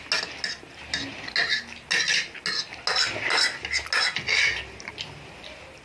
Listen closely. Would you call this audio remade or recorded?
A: recorded